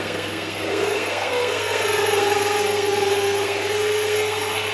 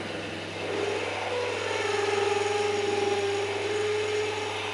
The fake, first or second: first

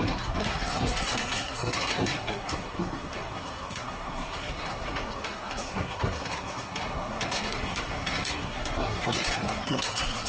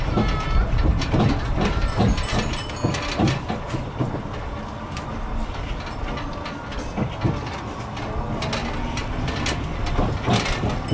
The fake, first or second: first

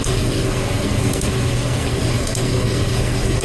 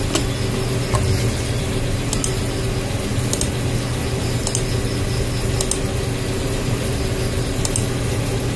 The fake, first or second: first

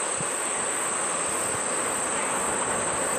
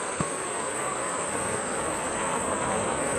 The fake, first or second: second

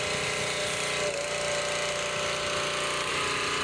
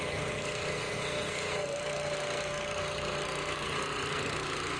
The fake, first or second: second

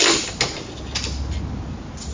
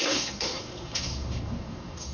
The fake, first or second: second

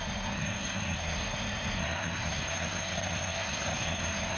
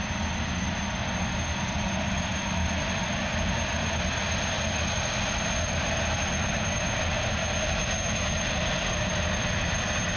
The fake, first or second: first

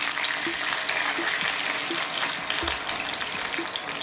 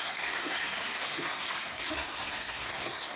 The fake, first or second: second